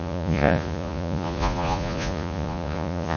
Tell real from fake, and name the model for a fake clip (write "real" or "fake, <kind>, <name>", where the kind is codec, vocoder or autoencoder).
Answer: fake, vocoder, Vocos